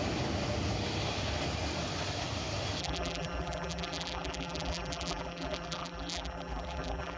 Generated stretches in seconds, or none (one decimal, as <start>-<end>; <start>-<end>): 2.8-7.2